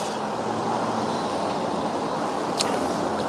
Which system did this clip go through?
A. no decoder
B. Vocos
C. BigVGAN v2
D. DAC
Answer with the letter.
A